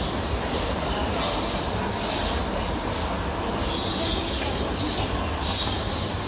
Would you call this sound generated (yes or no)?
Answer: no